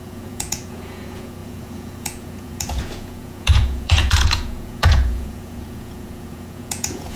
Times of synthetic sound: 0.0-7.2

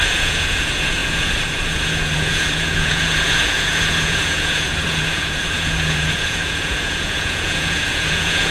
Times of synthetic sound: 0.0-8.5

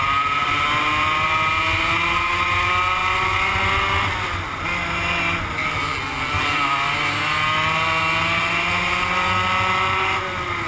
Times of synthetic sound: none